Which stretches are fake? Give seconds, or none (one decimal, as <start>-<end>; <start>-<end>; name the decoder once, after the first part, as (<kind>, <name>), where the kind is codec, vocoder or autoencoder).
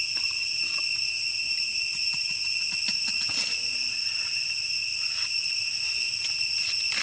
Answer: none